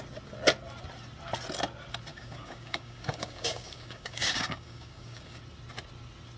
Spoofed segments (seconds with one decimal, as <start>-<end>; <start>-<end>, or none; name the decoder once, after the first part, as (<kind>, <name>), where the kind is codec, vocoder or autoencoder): 2.1-5.4 (codec, DAC)